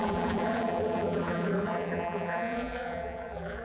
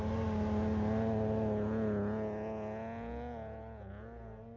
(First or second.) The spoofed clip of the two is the first